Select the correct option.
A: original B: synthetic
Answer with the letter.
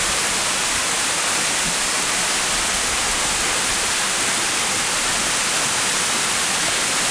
A